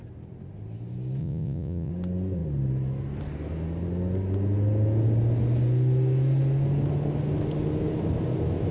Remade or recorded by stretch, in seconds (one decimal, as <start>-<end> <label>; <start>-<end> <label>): 0.0-1.2 recorded; 1.2-1.9 remade; 1.9-8.7 recorded